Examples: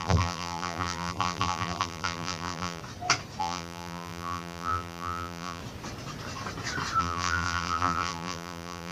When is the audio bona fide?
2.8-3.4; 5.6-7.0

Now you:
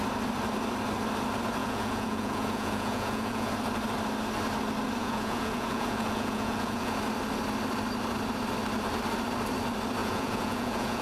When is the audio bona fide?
0.0-1.6; 3.5-5.0; 7.0-10.0

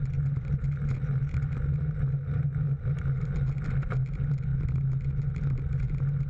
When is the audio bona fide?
0.0-6.3

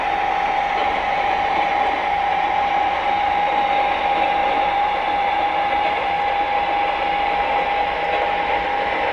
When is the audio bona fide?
0.0-0.8; 3.6-4.4; 6.4-9.1

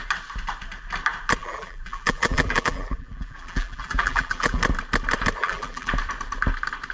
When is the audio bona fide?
0.0-1.4; 4.6-5.4; 5.9-6.9

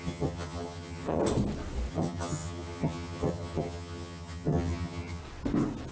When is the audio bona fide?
1.2-1.9; 5.2-5.9

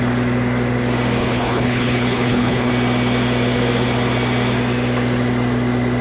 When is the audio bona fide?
0.0-1.2; 2.7-6.0